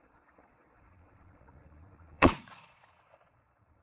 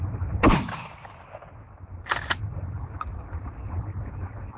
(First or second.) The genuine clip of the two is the second